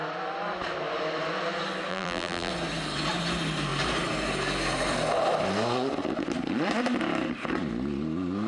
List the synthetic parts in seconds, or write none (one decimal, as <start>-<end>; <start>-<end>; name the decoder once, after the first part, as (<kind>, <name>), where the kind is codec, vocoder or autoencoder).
1.9-2.5 (vocoder, BigVGAN v2)

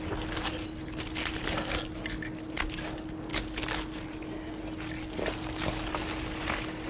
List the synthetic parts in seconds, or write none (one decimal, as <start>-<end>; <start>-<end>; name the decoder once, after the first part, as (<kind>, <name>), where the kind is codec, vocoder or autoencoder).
none

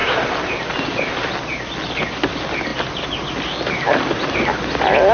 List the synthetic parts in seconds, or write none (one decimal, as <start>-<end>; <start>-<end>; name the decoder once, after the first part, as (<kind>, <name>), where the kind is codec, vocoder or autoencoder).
none

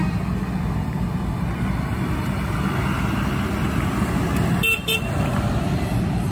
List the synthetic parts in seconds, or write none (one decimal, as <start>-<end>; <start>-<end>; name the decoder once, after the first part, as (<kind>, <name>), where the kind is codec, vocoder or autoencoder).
4.8-5.3 (vocoder, BigVGAN v2)

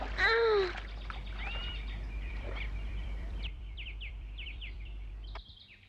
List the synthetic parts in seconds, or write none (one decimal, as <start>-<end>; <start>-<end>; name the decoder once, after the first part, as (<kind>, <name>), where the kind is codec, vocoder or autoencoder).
1.6-5.1 (vocoder, BigVGAN v2)

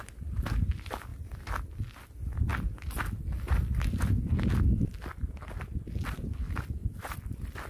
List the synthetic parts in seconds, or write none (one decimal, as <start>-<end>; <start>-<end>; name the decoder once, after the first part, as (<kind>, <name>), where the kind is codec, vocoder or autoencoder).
none

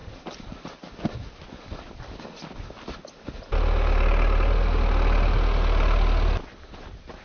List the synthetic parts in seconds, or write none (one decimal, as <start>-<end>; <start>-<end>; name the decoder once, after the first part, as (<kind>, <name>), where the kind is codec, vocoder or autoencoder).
0.0-1.4 (vocoder, BigVGAN v2)